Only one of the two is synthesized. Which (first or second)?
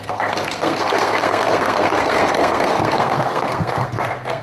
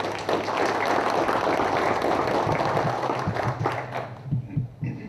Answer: first